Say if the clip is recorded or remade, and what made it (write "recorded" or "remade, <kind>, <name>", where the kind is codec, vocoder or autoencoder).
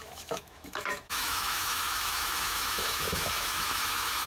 remade, autoencoder, DAC-VAE